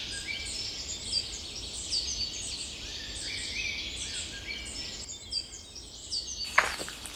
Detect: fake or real real